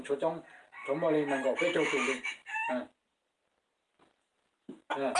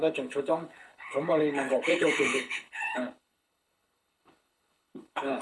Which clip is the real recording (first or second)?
first